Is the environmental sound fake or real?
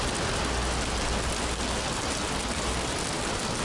real